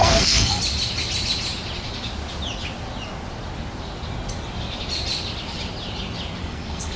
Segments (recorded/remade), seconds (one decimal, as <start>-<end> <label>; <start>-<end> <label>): 0.0-0.6 remade; 0.6-6.4 recorded; 6.4-7.0 remade